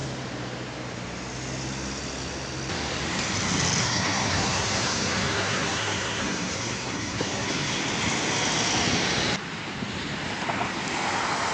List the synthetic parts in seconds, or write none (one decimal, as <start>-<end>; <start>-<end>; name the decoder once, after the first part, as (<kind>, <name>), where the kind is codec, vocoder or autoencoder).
3.8-7.8 (codec, SNAC)